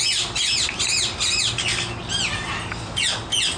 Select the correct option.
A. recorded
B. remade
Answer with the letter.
A